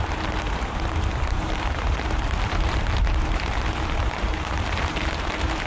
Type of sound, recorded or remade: remade